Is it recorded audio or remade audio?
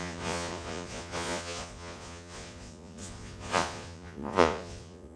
remade